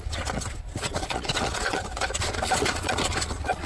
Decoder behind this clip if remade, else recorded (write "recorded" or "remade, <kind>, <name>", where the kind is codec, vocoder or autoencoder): remade, vocoder, Vocos